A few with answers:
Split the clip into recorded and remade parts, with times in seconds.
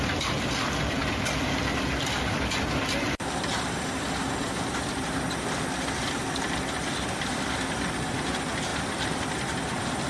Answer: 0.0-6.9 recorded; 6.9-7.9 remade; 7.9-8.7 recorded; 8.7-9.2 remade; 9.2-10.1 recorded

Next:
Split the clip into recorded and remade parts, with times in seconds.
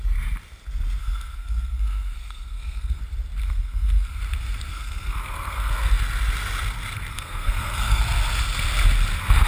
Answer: 0.0-1.0 recorded; 1.0-3.0 remade; 3.0-3.4 recorded; 3.4-4.2 remade; 4.2-4.7 recorded; 4.7-5.7 remade; 5.7-7.1 recorded; 7.1-8.0 remade; 8.0-9.5 recorded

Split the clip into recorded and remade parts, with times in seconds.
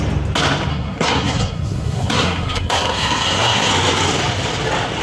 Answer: 0.0-0.7 recorded; 0.7-3.7 remade; 3.7-5.0 recorded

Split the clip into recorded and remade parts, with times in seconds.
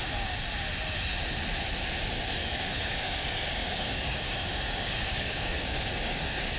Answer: 0.0-2.4 recorded; 2.4-6.6 remade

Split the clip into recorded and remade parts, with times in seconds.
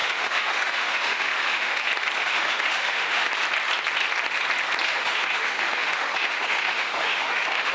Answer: 0.0-1.8 remade; 1.8-2.2 recorded; 2.2-3.3 remade; 3.3-4.9 recorded; 4.9-7.7 remade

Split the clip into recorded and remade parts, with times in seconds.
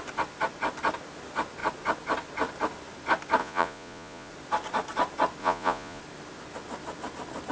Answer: 0.0-3.4 recorded; 3.4-4.3 remade; 4.3-5.4 recorded; 5.4-6.0 remade; 6.0-7.5 recorded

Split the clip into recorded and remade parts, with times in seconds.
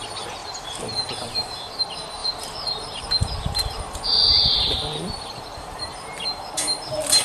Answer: 0.0-0.4 recorded; 0.4-1.8 remade; 1.8-2.2 recorded; 2.2-6.5 remade; 6.5-7.2 recorded